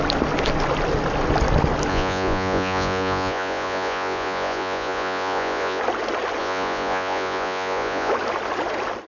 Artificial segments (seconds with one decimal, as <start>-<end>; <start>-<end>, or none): 1.9-5.8; 6.4-8.1